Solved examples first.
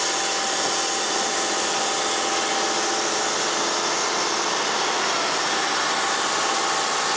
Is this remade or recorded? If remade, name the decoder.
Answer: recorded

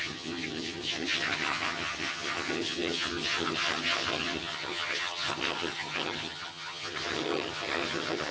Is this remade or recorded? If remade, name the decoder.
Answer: remade, vocoder, HiFi-GAN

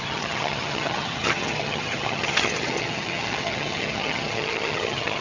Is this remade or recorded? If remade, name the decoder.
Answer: remade, vocoder, HiFi-GAN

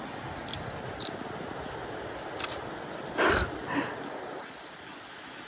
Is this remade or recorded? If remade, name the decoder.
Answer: recorded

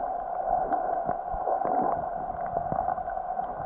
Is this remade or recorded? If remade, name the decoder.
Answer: recorded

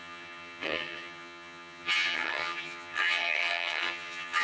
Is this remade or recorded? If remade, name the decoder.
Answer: remade, vocoder, HiFi-GAN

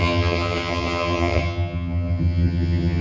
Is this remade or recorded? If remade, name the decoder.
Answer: remade, vocoder, HiFi-GAN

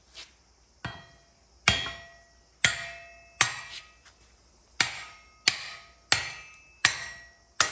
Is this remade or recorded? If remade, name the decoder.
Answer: recorded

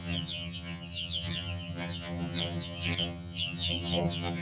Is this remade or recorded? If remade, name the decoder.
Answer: remade, vocoder, HiFi-GAN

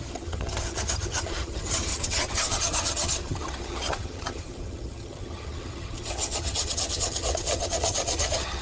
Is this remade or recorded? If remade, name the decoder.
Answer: remade, vocoder, HiFi-GAN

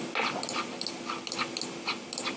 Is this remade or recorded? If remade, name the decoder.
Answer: recorded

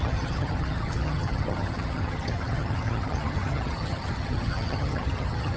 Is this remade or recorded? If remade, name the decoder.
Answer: remade, vocoder, HiFi-GAN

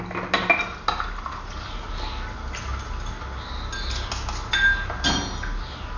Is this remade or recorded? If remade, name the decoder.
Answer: recorded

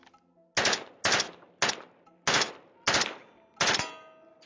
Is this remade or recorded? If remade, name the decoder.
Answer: recorded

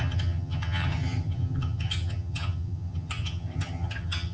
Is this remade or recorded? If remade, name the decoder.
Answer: remade, vocoder, HiFi-GAN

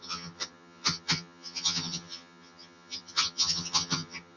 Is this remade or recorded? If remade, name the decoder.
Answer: remade, vocoder, HiFi-GAN